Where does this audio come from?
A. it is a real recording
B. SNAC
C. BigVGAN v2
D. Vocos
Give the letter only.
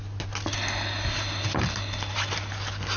A